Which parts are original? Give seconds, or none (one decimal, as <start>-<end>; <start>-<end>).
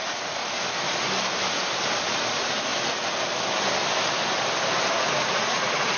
0.4-2.0; 2.7-4.9